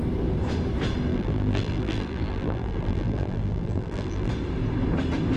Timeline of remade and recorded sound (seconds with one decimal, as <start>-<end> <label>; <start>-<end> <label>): 0.0-1.1 recorded; 1.1-4.3 remade; 4.3-5.4 recorded